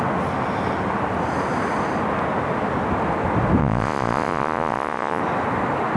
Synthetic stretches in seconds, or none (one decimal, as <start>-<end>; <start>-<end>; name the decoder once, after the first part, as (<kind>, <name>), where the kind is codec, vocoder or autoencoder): 3.6-5.2 (vocoder, Vocos)